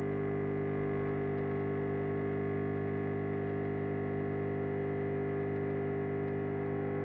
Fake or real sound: real